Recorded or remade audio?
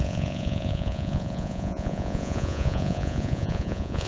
remade